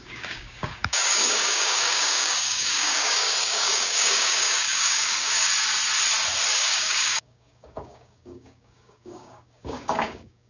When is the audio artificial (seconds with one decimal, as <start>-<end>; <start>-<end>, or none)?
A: 0.0-5.5; 6.5-10.5